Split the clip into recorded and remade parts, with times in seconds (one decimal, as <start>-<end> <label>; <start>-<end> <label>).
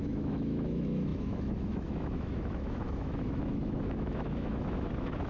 0.0-5.3 remade